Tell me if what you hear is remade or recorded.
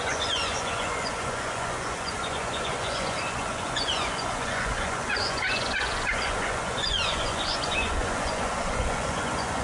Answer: remade